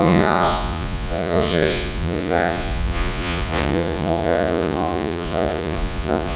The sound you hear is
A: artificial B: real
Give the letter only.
A